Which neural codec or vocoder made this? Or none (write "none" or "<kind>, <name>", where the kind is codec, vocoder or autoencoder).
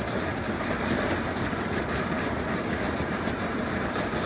vocoder, BigVGAN v2